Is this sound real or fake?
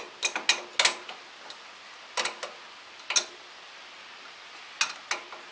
real